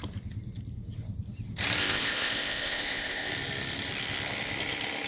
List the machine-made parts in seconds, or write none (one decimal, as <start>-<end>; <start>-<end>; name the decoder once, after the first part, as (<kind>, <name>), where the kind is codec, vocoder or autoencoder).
1.8-3.3 (codec, ZipCodec)